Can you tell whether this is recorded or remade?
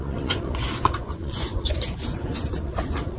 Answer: remade